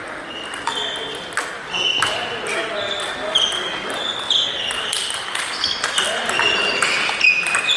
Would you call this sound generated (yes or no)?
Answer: no